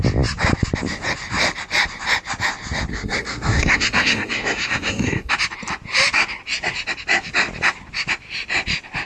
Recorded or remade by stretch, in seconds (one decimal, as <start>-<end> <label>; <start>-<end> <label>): 0.0-2.9 recorded; 2.9-5.3 remade; 5.3-9.1 recorded